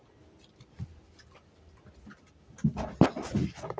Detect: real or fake real